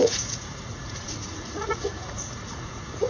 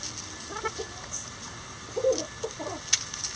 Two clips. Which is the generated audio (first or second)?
first